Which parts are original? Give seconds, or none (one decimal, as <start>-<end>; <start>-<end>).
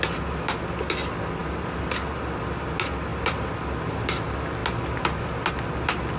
0.0-6.2